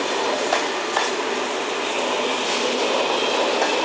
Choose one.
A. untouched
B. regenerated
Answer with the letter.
A